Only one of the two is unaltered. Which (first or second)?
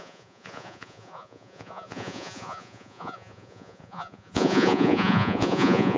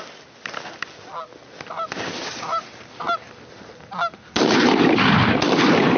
second